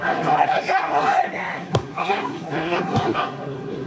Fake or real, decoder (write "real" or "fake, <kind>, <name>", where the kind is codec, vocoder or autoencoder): fake, codec, SNAC